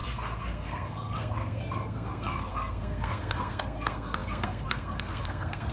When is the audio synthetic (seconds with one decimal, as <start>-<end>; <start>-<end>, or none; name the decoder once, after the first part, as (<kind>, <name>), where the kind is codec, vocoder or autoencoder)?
0.0-5.7 (codec, SNAC)